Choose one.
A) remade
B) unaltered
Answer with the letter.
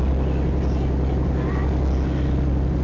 B